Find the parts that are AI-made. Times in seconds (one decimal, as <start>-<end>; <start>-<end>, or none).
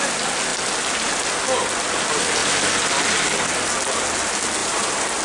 4.6-5.2